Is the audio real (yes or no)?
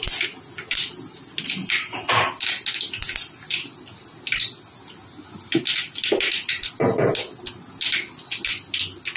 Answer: yes